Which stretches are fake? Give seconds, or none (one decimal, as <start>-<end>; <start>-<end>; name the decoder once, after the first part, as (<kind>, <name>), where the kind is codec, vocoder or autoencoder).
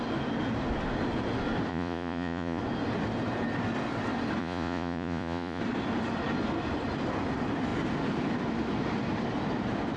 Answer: 1.7-2.6 (vocoder, Vocos); 4.4-5.6